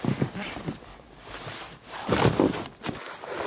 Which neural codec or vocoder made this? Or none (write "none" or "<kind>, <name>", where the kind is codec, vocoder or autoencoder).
vocoder, BigVGAN v2